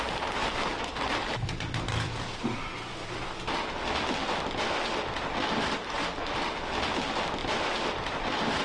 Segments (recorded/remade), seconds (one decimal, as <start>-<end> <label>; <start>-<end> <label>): 0.0-0.4 recorded; 0.4-2.8 remade; 2.8-7.4 recorded; 7.4-8.6 remade